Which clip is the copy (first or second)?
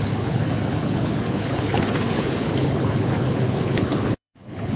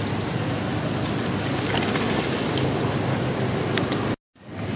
first